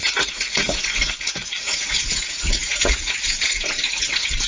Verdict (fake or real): fake